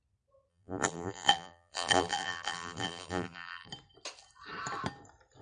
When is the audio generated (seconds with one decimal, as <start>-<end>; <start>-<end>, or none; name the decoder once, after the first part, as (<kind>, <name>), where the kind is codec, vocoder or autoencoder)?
0.5-3.7 (vocoder, BigVGAN v2)